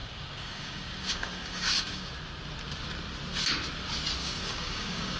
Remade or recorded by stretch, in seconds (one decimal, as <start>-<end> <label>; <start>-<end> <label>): 0.0-2.1 remade; 2.1-4.2 recorded; 4.2-5.2 remade